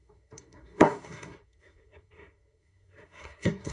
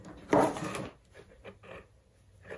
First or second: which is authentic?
second